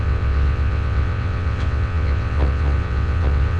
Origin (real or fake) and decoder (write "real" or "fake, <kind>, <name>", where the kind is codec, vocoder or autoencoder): fake, vocoder, WaveNeXt